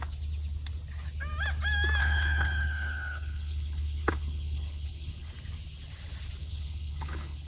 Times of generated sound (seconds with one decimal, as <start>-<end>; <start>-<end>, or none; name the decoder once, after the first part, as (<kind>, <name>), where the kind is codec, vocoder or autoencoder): 2.0-5.3 (codec, HILCodec); 6.4-7.5